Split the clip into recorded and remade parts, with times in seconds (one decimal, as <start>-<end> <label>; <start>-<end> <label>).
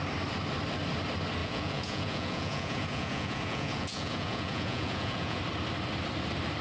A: 0.0-1.4 recorded; 1.4-5.4 remade; 5.4-6.6 recorded